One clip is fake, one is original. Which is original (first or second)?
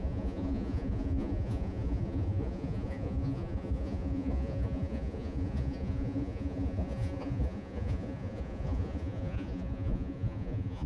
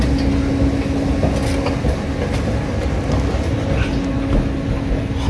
second